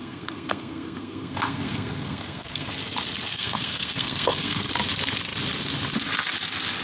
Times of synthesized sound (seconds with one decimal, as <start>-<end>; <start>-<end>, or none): 0.0-2.7; 3.3-4.7

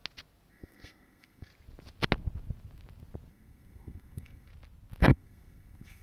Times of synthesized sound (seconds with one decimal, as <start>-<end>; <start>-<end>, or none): 0.5-1.5; 3.3-4.5; 5.0-6.0

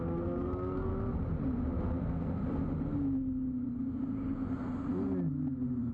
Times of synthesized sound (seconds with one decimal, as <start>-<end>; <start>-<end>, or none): 0.0-0.9; 2.0-2.4

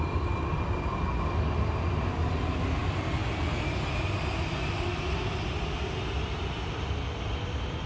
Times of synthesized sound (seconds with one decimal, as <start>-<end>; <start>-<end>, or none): none

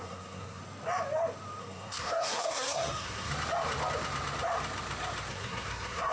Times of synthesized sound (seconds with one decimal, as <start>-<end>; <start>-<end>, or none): 0.0-0.6; 1.6-3.3; 5.3-6.1